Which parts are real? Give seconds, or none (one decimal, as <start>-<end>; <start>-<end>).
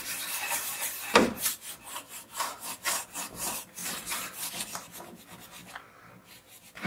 5.6-6.2